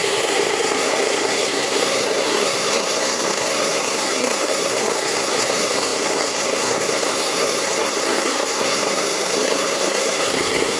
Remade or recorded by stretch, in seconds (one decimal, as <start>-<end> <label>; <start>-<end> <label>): 0.0-10.8 remade